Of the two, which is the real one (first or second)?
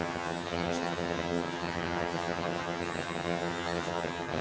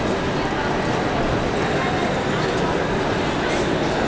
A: second